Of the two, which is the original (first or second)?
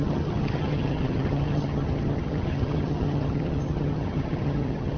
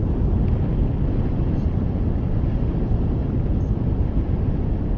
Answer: second